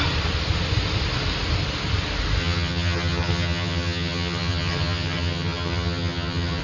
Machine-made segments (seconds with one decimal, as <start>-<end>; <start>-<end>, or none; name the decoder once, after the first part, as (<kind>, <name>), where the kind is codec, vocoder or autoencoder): 2.4-6.6 (vocoder, HiFi-GAN)